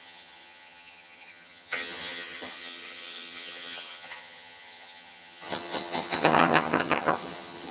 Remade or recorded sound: remade